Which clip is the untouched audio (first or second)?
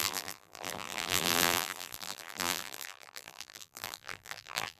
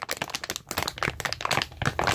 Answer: second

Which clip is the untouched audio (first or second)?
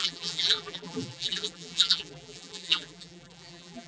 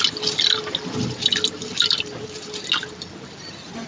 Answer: second